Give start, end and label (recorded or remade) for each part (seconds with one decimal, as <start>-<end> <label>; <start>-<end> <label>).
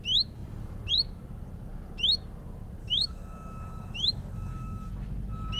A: 0.0-2.8 recorded; 2.8-4.9 remade; 4.9-5.6 recorded